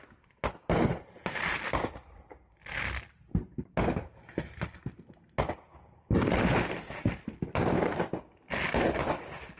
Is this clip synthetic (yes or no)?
no